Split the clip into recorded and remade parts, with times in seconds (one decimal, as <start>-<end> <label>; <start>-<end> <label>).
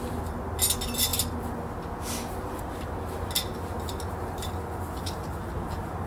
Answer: 0.0-6.1 recorded